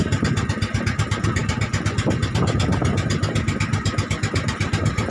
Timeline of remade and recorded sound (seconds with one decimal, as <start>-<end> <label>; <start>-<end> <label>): 0.0-5.1 recorded